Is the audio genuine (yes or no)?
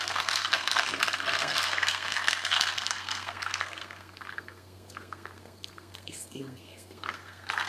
no